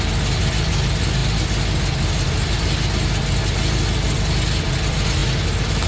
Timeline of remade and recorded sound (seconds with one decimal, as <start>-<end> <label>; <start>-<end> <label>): 0.0-5.9 recorded